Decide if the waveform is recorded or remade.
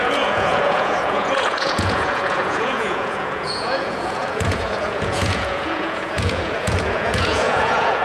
remade